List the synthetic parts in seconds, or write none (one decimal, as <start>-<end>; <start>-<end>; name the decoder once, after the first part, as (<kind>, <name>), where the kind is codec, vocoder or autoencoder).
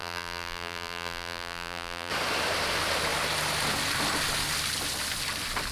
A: 0.0-2.1 (vocoder, BigVGAN v2)